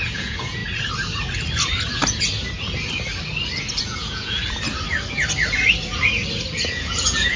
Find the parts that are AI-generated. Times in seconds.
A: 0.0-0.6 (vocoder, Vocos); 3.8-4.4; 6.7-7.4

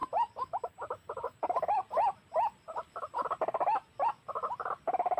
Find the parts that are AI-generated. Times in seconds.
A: 0.0-1.9 (vocoder, BigVGAN v2)

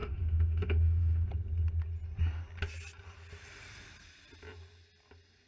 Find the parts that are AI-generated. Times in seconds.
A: 0.0-1.3 (autoencoder, DAC-VAE)

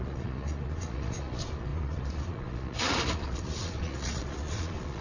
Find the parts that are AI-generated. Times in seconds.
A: 0.0-5.0 (vocoder, Vocos)